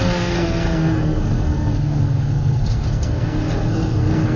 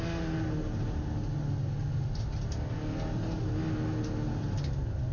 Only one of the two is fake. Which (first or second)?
first